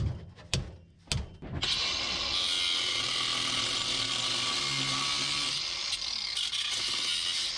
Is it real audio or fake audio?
real